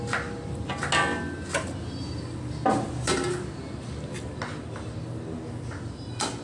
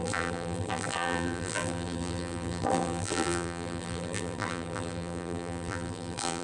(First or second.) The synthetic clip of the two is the second